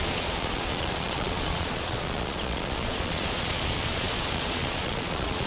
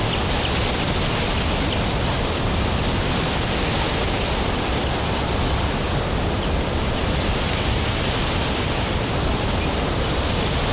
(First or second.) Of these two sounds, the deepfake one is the first